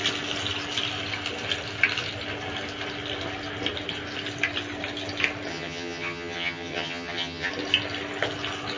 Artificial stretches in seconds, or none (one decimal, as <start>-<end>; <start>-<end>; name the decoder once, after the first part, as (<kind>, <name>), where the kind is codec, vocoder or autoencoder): 5.5-7.5 (vocoder, HiFi-GAN)